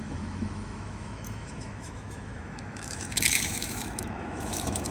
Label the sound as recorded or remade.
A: remade